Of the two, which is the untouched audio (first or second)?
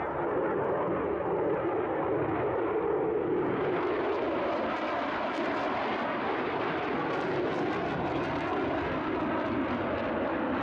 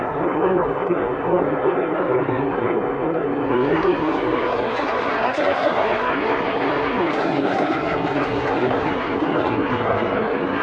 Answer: first